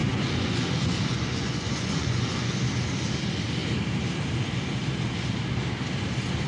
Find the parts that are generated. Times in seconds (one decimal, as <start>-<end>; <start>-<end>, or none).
0.0-2.6